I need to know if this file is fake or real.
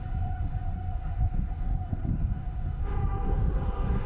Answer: fake